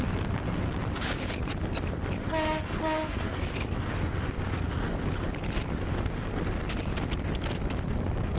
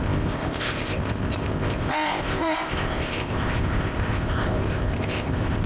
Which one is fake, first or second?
second